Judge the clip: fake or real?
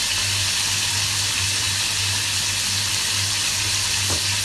real